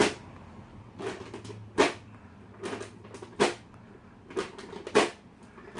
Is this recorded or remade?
recorded